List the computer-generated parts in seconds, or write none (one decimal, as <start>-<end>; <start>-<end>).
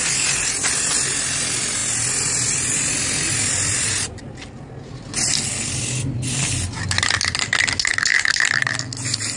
none